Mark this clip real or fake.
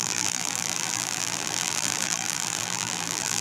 fake